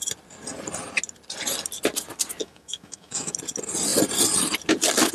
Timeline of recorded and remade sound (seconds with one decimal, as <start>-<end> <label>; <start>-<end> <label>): 0.0-2.4 recorded; 2.4-3.3 remade; 3.3-5.1 recorded